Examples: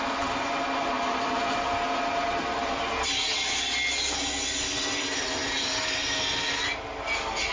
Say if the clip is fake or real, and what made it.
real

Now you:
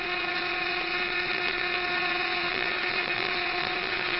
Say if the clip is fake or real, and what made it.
fake, vocoder, Vocos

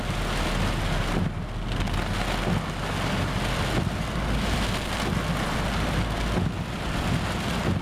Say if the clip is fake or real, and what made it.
real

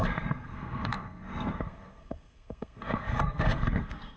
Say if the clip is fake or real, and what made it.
fake, codec, SNAC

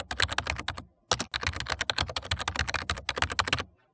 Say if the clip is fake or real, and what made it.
real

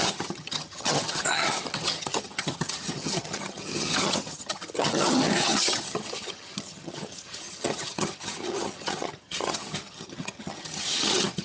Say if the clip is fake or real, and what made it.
fake, vocoder, HiFi-GAN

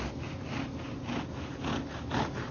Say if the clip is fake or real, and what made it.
real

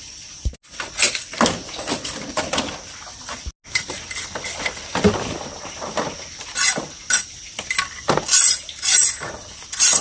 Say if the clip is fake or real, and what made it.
real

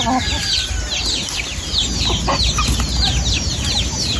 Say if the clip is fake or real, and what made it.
real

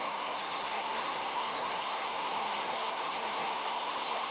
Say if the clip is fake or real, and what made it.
fake, codec, SNAC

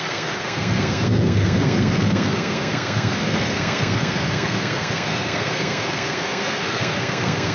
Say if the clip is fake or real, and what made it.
fake, codec, SNAC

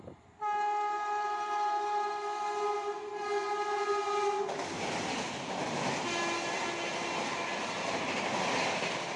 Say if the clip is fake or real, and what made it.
real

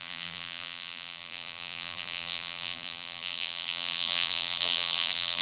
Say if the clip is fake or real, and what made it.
fake, vocoder, BigVGAN v2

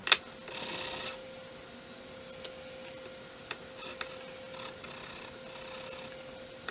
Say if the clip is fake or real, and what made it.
real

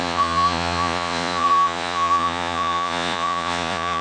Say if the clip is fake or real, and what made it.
fake, vocoder, Vocos